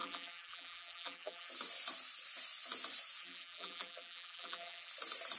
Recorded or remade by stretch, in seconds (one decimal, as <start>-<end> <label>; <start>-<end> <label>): 0.0-1.5 remade; 1.5-3.2 recorded; 3.2-4.9 remade; 4.9-5.4 recorded